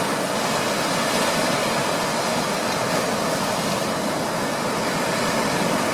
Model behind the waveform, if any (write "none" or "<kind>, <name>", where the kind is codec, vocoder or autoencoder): none